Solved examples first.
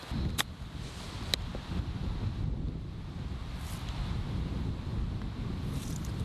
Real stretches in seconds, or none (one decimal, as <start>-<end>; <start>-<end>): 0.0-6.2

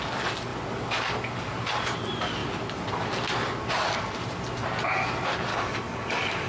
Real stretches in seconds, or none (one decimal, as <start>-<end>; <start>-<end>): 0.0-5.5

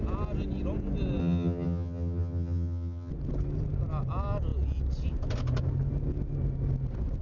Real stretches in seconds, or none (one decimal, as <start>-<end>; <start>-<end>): 0.0-1.2; 3.1-7.2